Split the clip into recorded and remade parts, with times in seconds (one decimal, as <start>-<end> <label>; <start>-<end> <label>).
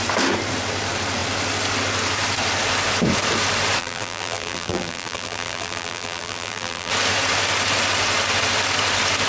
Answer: 0.0-3.8 recorded; 3.8-6.9 remade; 6.9-9.3 recorded